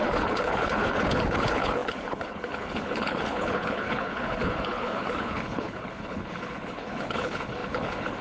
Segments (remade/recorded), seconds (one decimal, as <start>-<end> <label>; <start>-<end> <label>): 0.0-8.2 remade